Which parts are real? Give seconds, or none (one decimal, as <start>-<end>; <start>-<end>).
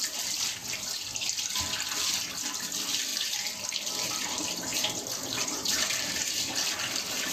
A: 0.0-3.1; 4.1-4.7; 6.6-7.3